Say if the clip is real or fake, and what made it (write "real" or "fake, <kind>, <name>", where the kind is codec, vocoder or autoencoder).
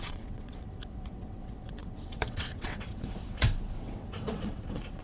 fake, vocoder, WaveNeXt